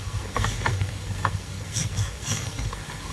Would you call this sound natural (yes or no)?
no